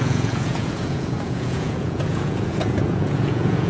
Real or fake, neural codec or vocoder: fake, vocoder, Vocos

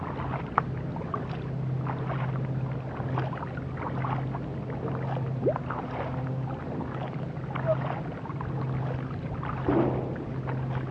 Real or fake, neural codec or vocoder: real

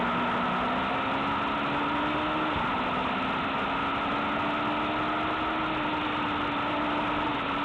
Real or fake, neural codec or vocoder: real